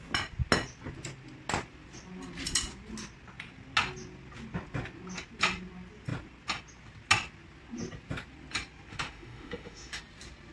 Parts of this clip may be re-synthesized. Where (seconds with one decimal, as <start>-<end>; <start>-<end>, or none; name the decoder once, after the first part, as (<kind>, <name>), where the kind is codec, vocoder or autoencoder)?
8.9-10.0 (autoencoder, DAC-VAE)